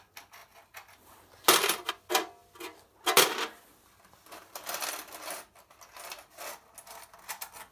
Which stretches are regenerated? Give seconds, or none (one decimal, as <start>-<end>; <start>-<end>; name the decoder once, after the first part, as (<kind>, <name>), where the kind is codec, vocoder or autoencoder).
none